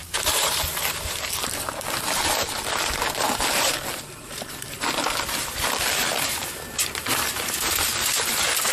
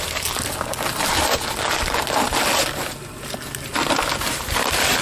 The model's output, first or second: first